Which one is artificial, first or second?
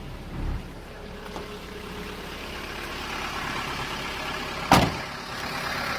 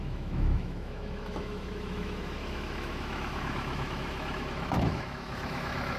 second